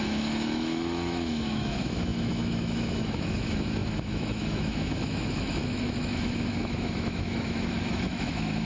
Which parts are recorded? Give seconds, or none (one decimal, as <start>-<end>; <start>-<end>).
none